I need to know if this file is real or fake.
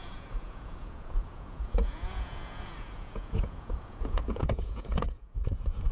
fake